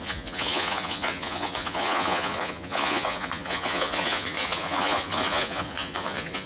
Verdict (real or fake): fake